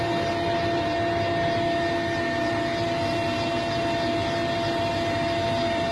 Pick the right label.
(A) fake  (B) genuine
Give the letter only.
B